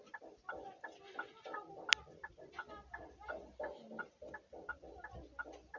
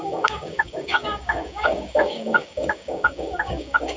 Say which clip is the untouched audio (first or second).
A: first